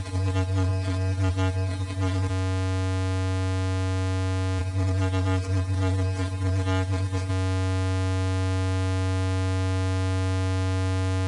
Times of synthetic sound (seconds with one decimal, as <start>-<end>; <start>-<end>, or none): 0.0-2.3; 4.6-7.3